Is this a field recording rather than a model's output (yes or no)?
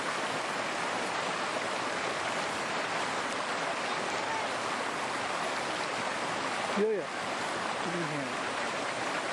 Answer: yes